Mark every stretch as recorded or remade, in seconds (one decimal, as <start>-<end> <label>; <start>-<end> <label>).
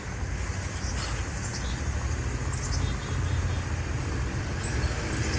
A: 0.0-5.4 recorded